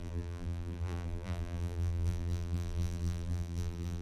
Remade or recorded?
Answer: remade